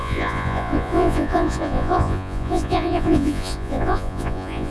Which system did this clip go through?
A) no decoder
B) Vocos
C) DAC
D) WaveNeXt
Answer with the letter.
B